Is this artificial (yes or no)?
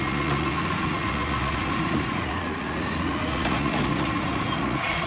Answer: yes